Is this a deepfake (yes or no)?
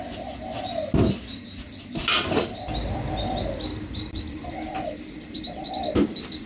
no